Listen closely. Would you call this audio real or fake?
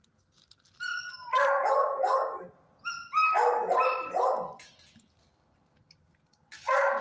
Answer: real